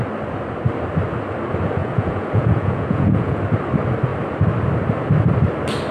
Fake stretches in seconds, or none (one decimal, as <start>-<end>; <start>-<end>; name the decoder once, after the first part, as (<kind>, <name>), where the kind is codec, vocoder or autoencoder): 1.8-3.4 (vocoder, Vocos)